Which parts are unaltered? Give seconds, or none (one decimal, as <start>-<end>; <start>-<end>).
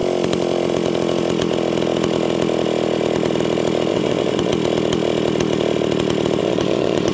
0.0-3.9; 4.5-6.4